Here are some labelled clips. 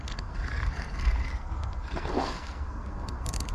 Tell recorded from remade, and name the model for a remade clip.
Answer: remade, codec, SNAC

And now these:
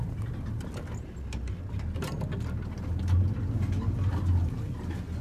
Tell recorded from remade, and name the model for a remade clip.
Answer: recorded